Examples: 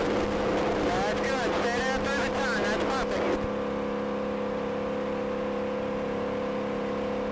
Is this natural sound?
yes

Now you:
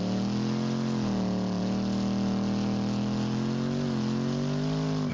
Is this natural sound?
yes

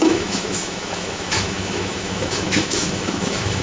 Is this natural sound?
no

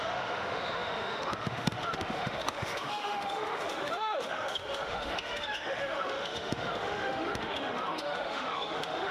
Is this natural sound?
no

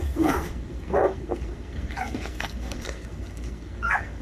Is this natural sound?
no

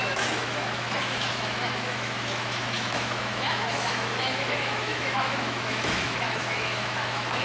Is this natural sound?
no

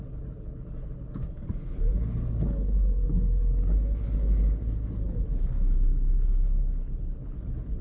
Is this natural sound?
no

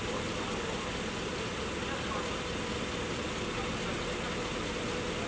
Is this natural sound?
yes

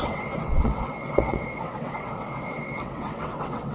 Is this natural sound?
no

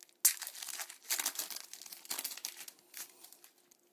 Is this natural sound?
yes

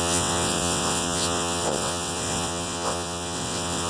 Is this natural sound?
no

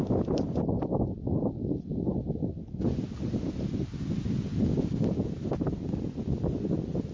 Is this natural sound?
yes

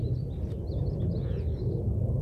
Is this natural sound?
yes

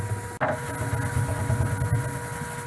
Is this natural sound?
yes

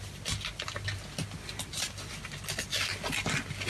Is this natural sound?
yes